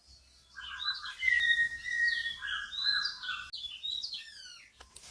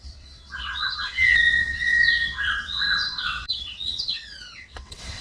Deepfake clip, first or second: second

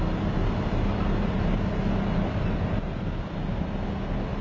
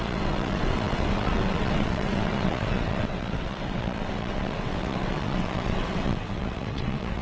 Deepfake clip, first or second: second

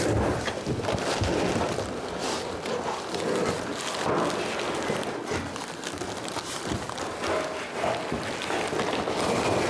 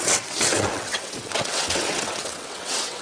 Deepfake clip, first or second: second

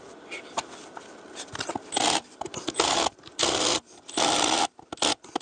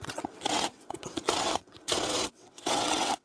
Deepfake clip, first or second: second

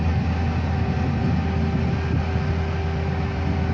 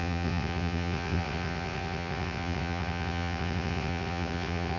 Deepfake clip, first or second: second